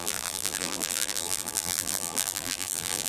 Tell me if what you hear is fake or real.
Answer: fake